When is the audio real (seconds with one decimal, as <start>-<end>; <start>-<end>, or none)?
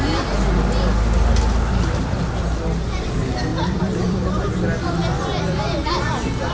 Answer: 0.0-3.5; 4.4-6.5